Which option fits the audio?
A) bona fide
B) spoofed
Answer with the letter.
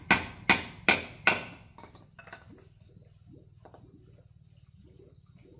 A